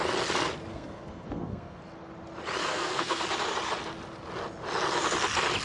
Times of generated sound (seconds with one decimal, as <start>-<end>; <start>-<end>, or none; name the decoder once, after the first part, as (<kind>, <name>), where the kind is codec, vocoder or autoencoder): 0.7-1.8 (codec, SNAC); 2.6-3.2